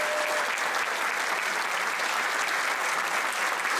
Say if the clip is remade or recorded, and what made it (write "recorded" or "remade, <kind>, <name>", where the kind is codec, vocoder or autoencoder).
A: recorded